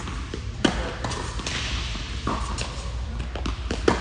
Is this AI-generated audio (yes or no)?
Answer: no